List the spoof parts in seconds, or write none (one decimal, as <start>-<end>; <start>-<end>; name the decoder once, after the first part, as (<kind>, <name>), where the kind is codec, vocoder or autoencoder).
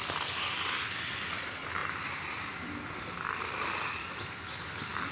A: none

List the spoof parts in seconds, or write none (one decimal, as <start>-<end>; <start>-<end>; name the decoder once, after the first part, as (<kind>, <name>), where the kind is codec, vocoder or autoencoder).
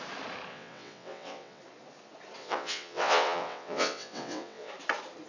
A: 0.5-1.6 (vocoder, WaveNeXt); 2.4-4.7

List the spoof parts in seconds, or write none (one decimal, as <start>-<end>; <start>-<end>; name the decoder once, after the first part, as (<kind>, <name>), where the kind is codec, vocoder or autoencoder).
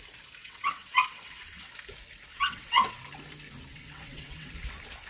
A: 0.4-1.7 (vocoder, WaveNeXt); 2.3-3.0; 3.7-4.5